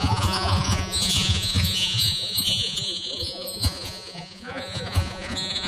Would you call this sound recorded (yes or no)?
no